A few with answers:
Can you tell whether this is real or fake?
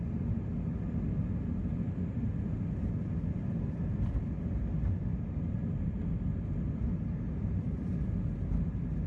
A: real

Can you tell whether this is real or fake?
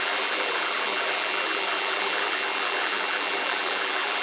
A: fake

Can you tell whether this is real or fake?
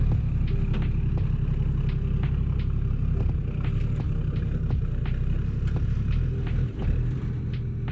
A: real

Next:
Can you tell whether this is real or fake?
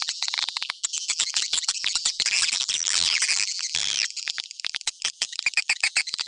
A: fake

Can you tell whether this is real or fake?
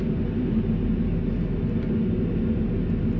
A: real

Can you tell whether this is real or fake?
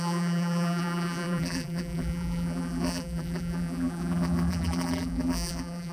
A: fake